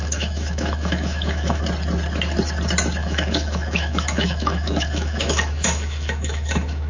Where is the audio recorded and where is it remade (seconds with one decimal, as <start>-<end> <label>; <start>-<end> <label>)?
0.0-1.6 remade; 1.6-3.0 recorded; 3.0-6.9 remade